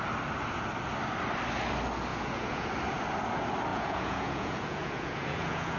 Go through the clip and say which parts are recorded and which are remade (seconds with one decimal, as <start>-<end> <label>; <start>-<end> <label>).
0.0-2.1 recorded; 2.1-2.7 remade; 2.7-3.7 recorded; 3.7-5.8 remade